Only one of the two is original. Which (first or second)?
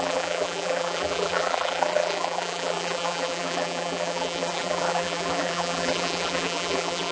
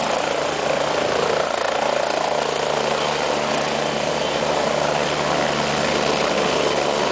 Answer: second